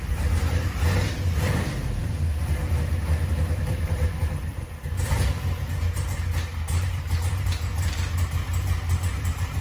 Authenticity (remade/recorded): remade